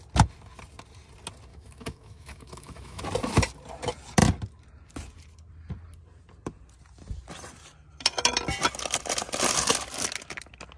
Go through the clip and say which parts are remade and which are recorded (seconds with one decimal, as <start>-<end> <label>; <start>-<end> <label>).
0.0-1.5 recorded; 1.5-3.0 remade; 3.0-10.8 recorded